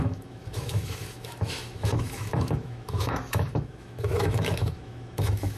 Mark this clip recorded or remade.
remade